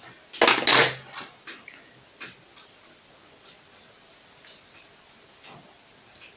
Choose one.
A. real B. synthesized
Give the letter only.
A